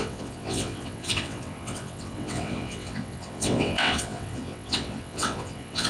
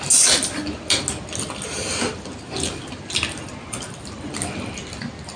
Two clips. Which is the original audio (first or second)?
second